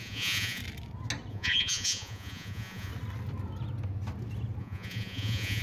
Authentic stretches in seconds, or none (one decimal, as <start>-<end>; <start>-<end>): 0.6-1.3; 2.9-4.6